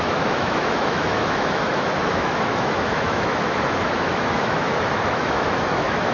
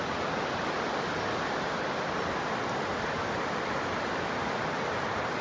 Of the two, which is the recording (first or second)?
second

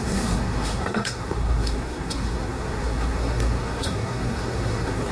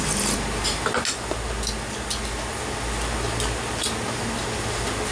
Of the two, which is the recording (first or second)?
second